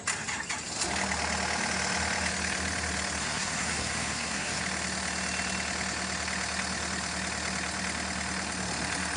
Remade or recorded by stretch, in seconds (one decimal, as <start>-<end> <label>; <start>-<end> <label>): 0.0-3.2 recorded; 3.2-4.6 remade; 4.6-9.2 recorded